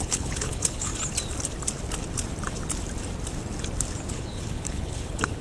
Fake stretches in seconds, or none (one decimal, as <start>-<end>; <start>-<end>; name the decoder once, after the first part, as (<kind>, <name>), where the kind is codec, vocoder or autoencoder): 0.0-0.9 (codec, HILCodec); 4.1-5.4